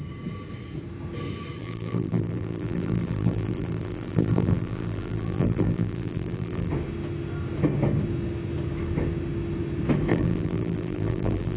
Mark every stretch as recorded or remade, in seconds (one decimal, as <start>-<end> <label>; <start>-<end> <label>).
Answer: 0.0-1.6 recorded; 1.6-6.7 remade; 6.7-10.1 recorded; 10.1-11.6 remade